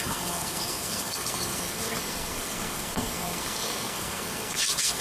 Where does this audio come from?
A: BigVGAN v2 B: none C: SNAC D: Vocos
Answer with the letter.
C